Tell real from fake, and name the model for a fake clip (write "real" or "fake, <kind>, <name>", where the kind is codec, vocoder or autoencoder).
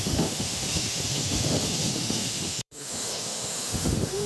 fake, autoencoder, DAC-VAE